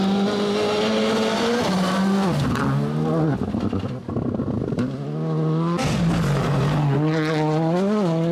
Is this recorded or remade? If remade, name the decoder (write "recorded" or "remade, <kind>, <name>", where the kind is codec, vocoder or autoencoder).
recorded